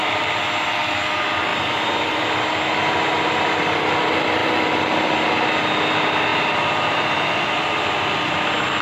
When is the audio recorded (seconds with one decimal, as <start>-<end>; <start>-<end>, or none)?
0.0-8.8

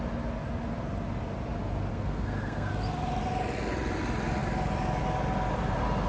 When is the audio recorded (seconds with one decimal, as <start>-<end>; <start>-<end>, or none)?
0.0-1.9; 2.7-6.1

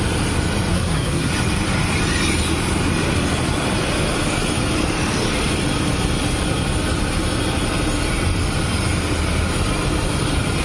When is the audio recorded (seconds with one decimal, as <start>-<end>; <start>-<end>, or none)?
0.0-0.7; 1.3-10.6